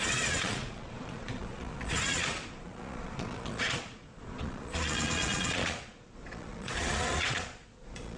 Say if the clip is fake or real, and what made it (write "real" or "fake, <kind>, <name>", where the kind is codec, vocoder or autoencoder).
fake, vocoder, Vocos